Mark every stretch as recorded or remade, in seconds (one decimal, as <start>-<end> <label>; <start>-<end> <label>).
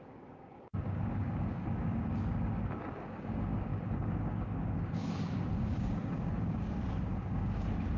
0.0-8.0 remade